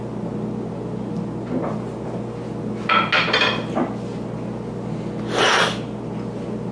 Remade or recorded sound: recorded